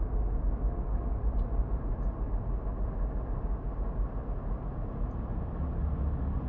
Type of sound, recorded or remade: recorded